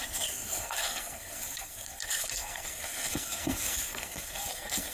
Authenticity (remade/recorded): remade